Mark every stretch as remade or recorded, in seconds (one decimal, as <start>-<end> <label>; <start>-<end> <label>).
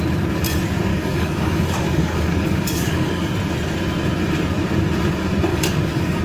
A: 0.0-0.9 recorded; 0.9-3.3 remade; 3.3-5.5 recorded; 5.5-6.2 remade